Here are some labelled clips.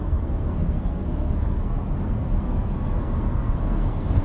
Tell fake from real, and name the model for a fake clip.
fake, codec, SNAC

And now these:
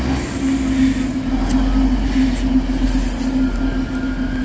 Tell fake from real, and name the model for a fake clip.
real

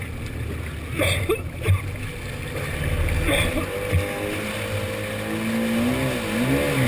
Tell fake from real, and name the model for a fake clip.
real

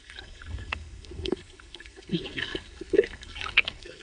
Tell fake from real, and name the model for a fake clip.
fake, codec, SNAC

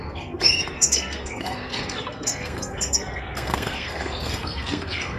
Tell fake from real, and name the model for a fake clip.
fake, codec, SNAC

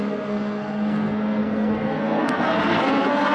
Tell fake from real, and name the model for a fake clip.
fake, codec, SNAC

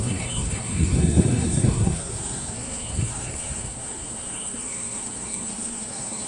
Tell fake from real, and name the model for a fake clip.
fake, codec, SNAC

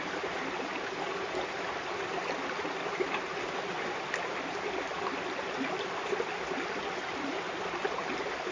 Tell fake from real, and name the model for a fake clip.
real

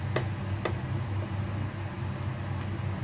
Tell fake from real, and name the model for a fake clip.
real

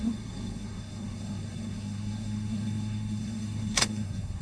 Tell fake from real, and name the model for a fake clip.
fake, codec, SNAC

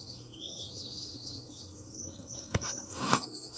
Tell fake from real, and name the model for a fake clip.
fake, codec, SNAC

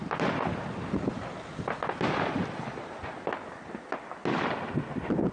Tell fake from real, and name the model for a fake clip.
real